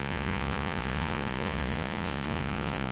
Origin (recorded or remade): remade